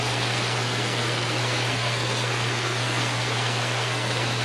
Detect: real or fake fake